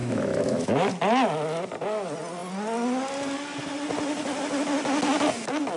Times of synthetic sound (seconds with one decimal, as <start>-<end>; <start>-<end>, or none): 0.0-0.9